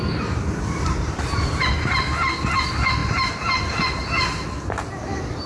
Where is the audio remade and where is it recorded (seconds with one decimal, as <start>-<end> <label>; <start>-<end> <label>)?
0.0-3.0 remade; 3.0-4.7 recorded; 4.7-5.5 remade